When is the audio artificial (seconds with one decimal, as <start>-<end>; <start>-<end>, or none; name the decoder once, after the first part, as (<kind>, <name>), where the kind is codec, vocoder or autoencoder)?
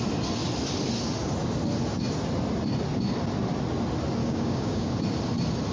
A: 4.2-4.9 (codec, DAC)